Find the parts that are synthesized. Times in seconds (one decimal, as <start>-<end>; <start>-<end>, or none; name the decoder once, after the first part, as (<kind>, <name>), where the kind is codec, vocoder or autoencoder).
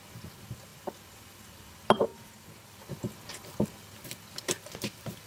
2.1-2.8 (vocoder, BigVGAN v2)